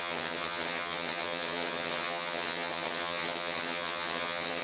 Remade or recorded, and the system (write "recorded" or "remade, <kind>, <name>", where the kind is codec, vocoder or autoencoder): remade, vocoder, HiFi-GAN